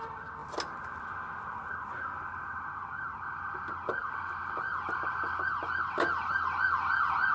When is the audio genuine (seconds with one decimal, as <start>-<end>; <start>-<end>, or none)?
0.0-7.3